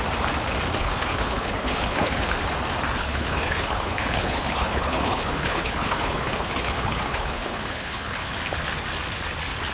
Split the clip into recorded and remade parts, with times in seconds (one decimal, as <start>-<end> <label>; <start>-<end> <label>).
0.0-0.8 recorded; 0.8-2.3 remade; 2.3-3.0 recorded; 3.0-8.3 remade; 8.3-9.7 recorded